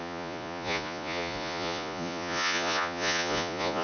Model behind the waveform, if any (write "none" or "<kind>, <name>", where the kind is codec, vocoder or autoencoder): vocoder, Vocos